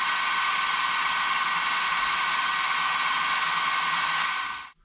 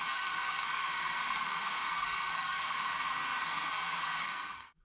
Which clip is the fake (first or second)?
second